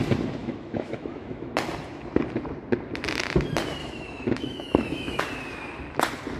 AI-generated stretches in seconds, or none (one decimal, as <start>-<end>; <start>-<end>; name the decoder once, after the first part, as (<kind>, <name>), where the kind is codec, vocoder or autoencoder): 0.4-1.5 (autoencoder, DAC-VAE); 3.8-5.2